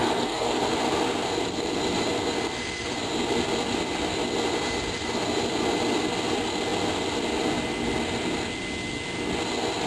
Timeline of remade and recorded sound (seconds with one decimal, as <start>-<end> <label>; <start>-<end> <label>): 0.0-0.6 remade; 0.6-9.9 recorded